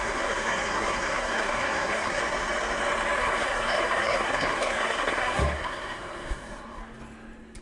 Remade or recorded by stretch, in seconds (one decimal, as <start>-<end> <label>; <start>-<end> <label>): 0.0-2.2 remade; 2.2-3.2 recorded; 3.2-6.8 remade; 6.8-7.6 recorded

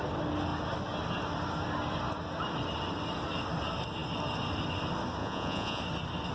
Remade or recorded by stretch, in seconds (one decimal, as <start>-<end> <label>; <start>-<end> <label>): 0.0-5.2 recorded; 5.2-5.8 remade; 5.8-6.3 recorded